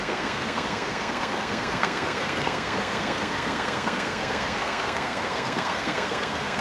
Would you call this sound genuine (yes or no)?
no